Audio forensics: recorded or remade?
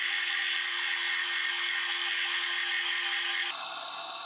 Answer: recorded